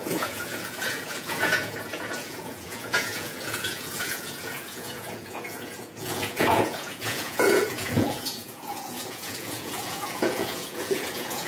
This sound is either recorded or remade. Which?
remade